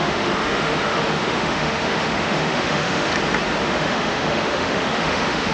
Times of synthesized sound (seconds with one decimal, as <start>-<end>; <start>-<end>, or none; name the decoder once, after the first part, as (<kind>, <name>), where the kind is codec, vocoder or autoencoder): 0.0-3.1 (autoencoder, DAC-VAE); 3.6-5.5